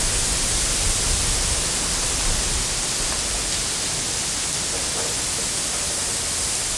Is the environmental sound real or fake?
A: real